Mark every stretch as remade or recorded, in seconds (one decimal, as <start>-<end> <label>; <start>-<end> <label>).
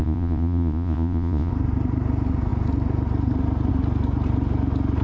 0.0-1.5 remade; 1.5-5.0 recorded